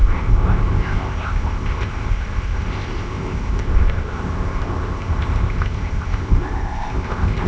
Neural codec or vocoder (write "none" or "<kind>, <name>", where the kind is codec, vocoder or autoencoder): codec, ZipCodec